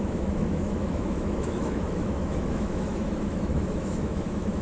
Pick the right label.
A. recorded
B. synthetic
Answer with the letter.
B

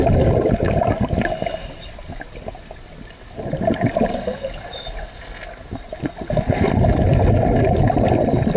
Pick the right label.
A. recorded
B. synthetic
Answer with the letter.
A